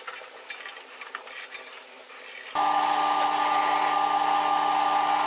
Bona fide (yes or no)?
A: yes